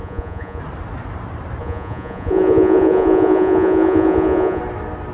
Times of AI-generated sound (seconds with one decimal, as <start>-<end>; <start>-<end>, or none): 0.0-0.6; 1.6-4.6